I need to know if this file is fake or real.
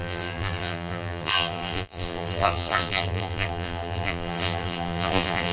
fake